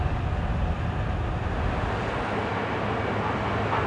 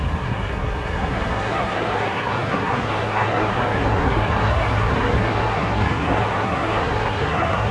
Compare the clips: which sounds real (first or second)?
first